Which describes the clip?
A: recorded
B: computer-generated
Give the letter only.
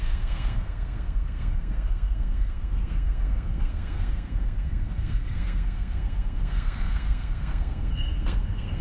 B